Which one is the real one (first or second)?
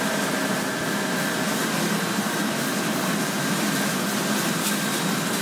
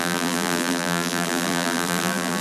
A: first